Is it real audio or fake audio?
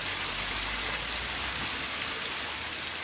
real